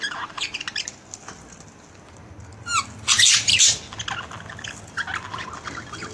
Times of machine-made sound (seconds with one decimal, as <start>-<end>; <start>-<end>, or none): 3.3-4.0